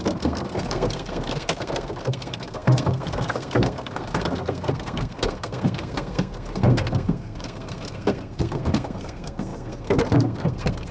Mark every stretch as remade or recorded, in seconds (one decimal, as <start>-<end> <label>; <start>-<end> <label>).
0.0-10.9 remade